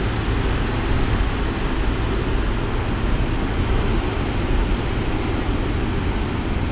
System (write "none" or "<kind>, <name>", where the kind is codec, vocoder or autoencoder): none